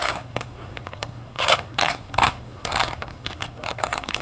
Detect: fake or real fake